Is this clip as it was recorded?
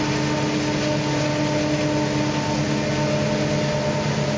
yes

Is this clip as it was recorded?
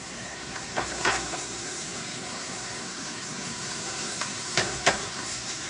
no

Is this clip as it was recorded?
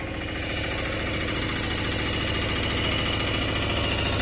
yes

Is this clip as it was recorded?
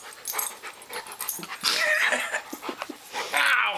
yes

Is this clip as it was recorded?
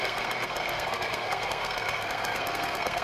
no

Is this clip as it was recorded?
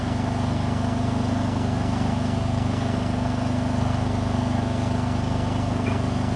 no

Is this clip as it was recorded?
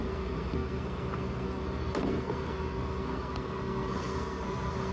no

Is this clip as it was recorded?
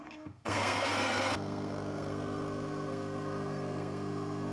no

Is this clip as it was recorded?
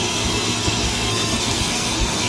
no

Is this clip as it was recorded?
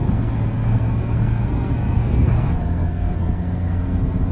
no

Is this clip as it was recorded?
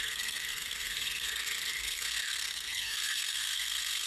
no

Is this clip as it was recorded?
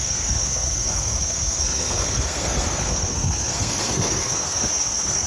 no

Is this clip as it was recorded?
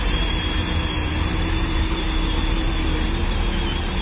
yes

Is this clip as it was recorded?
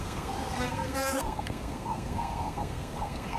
no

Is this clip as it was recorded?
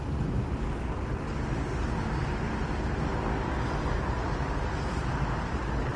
yes